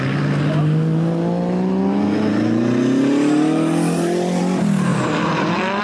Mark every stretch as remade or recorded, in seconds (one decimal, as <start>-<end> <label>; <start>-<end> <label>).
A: 0.0-4.9 recorded; 4.9-5.8 remade